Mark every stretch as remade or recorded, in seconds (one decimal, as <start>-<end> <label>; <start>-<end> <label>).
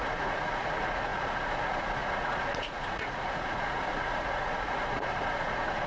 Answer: 0.0-5.9 remade